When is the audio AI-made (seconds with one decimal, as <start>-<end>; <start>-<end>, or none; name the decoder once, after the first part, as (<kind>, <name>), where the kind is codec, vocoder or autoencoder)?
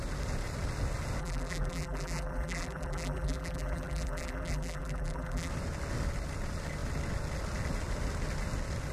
1.2-5.5 (vocoder, BigVGAN v2)